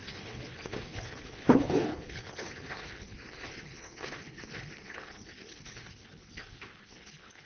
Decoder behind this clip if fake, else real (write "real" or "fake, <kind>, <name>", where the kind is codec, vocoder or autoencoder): fake, codec, HILCodec